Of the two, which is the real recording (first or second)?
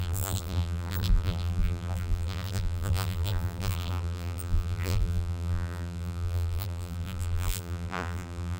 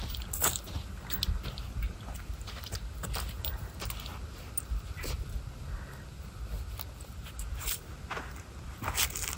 second